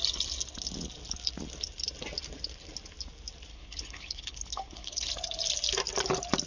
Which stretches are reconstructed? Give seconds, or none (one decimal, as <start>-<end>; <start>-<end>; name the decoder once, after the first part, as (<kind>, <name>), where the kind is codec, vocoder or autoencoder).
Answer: 3.5-5.1 (codec, HILCodec)